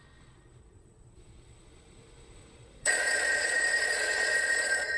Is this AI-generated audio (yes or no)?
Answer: yes